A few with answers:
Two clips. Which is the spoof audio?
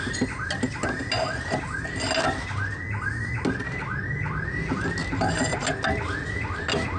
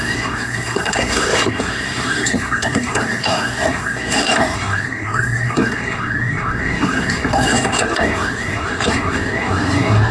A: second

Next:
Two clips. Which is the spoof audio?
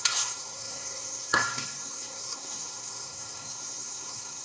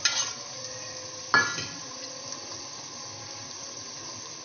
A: first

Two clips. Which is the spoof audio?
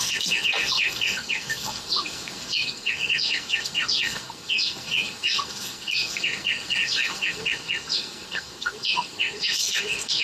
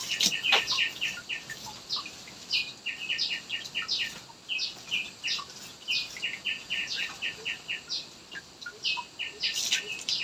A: first